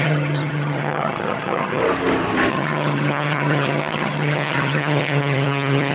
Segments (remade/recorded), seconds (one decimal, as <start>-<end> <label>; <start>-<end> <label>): 0.0-1.8 remade; 1.8-2.5 recorded; 2.5-5.9 remade